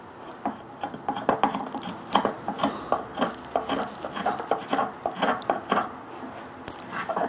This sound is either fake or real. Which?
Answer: real